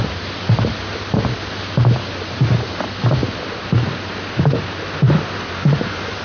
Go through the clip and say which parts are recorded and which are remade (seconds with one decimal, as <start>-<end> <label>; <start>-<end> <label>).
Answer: 0.0-6.2 recorded